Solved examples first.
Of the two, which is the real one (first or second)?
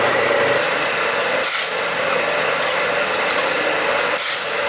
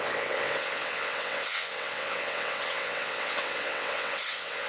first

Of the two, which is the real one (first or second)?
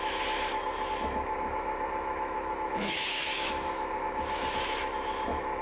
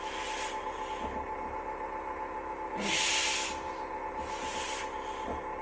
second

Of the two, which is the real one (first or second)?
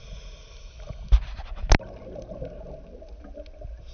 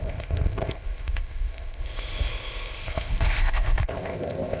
first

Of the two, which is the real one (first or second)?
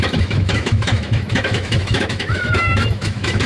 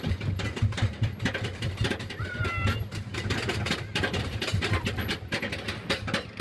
second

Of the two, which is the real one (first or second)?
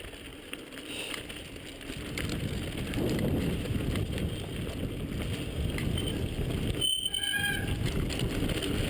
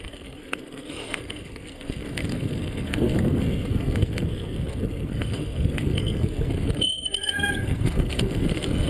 first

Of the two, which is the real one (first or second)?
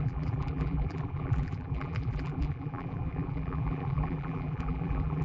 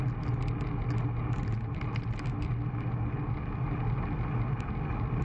second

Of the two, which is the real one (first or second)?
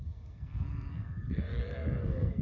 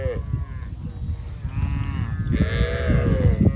second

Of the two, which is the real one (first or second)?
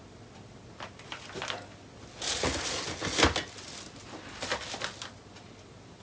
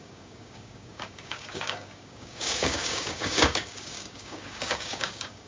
first